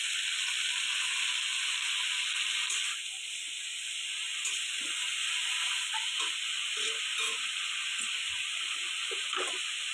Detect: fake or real real